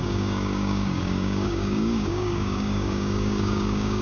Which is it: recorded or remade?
remade